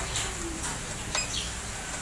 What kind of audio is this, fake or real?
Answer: real